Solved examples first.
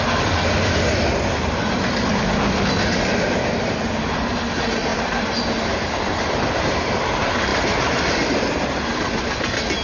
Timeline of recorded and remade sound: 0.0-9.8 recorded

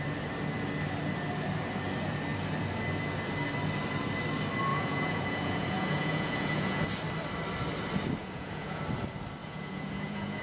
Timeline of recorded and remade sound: 0.0-4.7 recorded; 4.7-6.8 remade; 6.8-8.2 recorded; 8.2-8.8 remade; 8.8-9.4 recorded; 9.4-10.4 remade

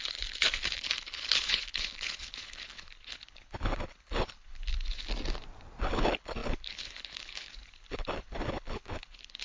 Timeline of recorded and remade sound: 0.0-5.1 remade; 5.1-5.8 recorded; 5.8-9.4 remade

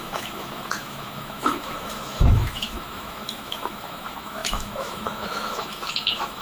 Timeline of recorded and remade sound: 0.0-6.4 remade